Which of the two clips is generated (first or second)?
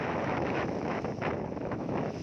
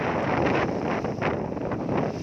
first